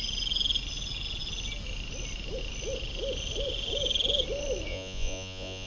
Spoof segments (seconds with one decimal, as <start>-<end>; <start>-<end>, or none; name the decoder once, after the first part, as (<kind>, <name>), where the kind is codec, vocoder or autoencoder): 4.7-5.7 (vocoder, Vocos)